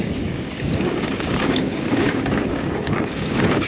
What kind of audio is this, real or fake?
fake